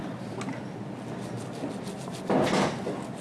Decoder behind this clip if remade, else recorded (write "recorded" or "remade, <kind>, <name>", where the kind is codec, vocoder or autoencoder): recorded